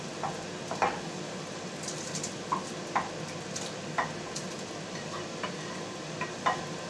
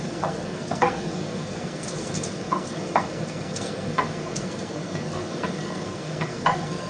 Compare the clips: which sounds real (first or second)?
first